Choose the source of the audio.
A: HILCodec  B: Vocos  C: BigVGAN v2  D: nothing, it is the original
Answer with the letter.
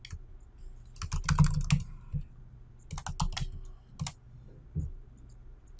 D